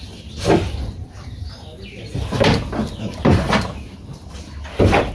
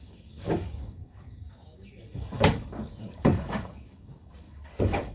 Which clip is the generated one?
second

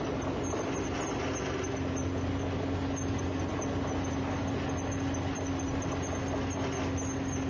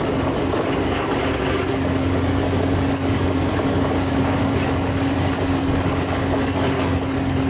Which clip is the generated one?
second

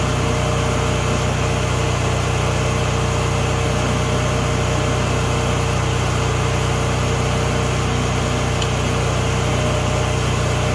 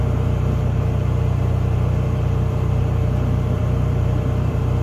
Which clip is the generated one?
second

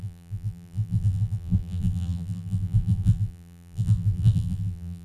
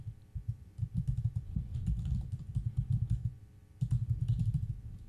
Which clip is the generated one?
first